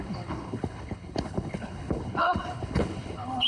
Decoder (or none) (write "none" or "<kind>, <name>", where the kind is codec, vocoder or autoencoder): codec, HILCodec